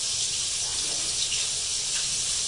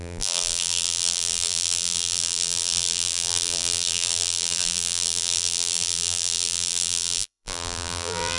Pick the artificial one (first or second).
second